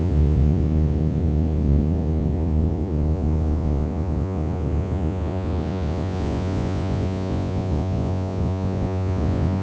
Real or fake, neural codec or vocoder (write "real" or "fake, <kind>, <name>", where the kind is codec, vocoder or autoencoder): fake, vocoder, Vocos